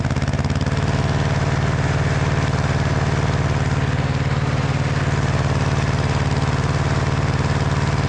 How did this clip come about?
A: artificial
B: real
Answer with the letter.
A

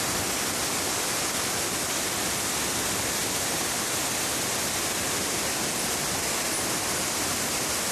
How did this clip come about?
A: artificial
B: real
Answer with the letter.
B